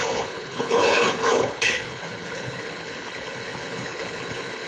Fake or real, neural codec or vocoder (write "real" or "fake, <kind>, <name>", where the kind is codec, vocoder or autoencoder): fake, codec, HILCodec